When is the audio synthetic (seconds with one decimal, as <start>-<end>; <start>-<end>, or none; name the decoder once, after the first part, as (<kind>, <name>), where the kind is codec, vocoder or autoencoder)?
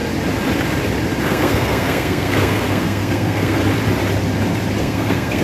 1.2-3.6 (codec, SNAC); 4.8-5.4